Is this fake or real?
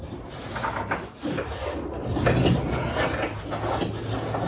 real